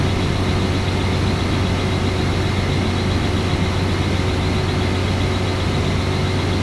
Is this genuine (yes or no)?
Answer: yes